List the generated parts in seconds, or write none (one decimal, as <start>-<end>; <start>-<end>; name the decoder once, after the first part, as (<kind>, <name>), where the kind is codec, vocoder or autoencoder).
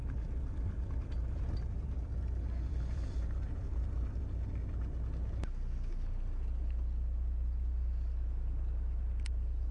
0.0-4.2 (vocoder, BigVGAN v2)